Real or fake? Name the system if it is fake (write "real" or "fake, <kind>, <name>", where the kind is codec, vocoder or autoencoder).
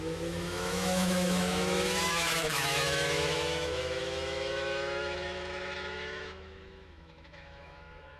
fake, autoencoder, DAC-VAE